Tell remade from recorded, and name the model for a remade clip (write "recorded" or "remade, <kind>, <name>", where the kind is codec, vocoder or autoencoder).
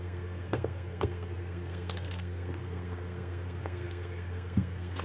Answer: remade, codec, SNAC